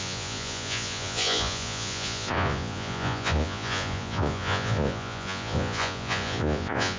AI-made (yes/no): yes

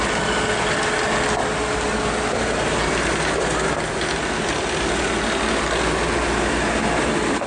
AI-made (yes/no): no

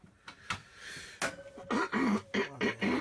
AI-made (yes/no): no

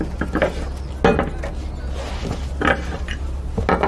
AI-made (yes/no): no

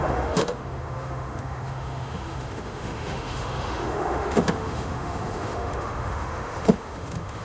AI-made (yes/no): yes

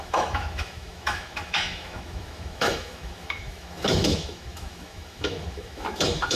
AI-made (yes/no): yes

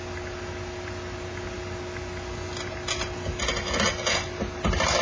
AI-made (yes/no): no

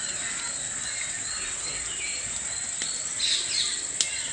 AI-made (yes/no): no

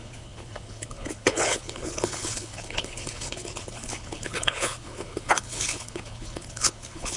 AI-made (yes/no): yes